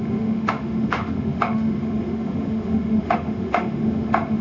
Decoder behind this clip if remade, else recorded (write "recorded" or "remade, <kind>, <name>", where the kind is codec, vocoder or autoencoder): remade, autoencoder, DAC-VAE